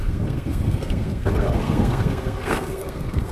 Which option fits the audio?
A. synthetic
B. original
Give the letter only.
A